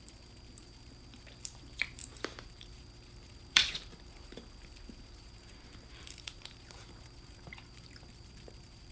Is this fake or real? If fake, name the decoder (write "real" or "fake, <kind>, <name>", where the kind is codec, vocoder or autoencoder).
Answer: fake, vocoder, BigVGAN v2